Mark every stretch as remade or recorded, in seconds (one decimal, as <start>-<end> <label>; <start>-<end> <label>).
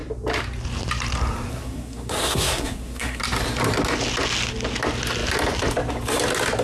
0.0-1.5 recorded; 1.5-3.2 remade; 3.2-6.6 recorded